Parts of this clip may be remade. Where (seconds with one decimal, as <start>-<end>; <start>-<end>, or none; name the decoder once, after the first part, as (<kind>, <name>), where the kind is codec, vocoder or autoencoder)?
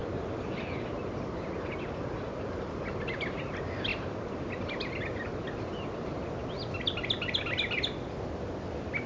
none